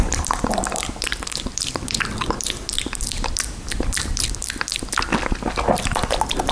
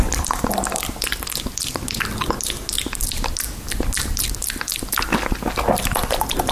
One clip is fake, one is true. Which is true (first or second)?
second